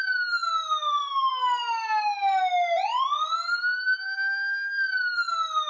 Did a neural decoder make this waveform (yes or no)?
no